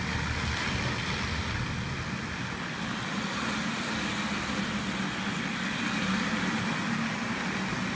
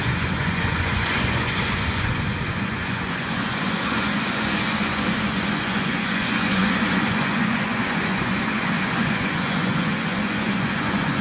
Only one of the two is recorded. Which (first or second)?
first